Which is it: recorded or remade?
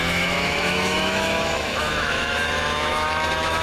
remade